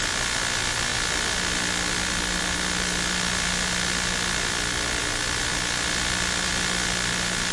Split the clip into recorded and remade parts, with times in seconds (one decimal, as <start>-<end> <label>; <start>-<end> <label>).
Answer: 0.0-7.5 recorded